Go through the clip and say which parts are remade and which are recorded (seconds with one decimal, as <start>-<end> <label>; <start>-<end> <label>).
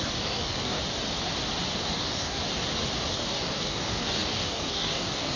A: 0.0-0.8 remade; 0.8-1.8 recorded; 1.8-2.4 remade; 2.4-3.1 recorded; 3.1-5.4 remade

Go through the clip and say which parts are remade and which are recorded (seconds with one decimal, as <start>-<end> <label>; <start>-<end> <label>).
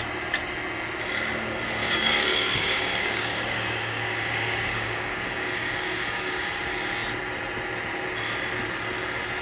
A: 0.0-1.8 recorded; 1.8-6.6 remade; 6.6-9.4 recorded